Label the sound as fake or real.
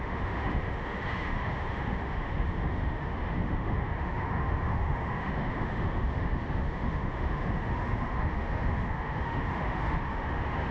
fake